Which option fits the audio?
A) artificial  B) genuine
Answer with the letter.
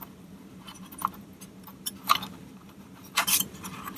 A